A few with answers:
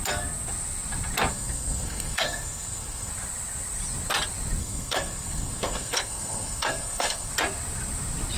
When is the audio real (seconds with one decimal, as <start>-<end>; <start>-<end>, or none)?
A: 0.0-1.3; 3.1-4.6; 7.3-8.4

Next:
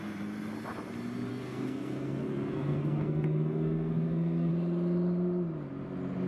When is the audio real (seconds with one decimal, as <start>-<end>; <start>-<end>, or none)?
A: 0.0-1.3; 4.5-6.3

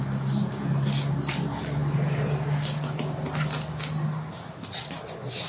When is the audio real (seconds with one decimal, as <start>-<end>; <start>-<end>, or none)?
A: 0.0-5.5

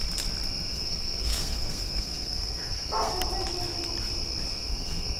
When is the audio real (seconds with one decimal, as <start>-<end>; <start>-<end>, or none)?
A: 0.0-0.7; 3.1-4.5

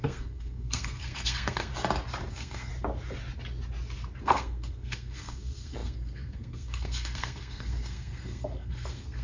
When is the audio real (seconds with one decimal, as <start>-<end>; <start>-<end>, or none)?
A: 1.7-2.3; 2.7-4.2